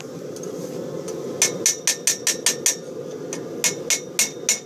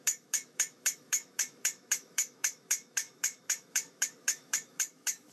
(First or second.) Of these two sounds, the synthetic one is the second